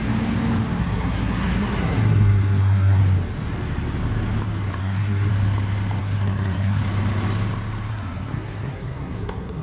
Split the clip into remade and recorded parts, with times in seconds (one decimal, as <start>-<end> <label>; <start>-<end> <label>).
0.0-0.8 recorded; 0.8-3.0 remade; 3.0-4.8 recorded; 4.8-5.3 remade; 5.3-6.0 recorded; 6.0-6.8 remade; 6.8-7.9 recorded; 7.9-9.6 remade